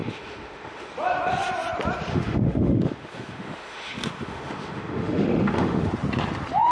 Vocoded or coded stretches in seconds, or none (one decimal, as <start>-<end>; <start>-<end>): 0.0-0.9; 2.1-5.9